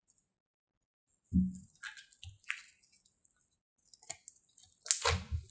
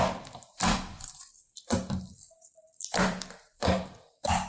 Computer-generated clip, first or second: second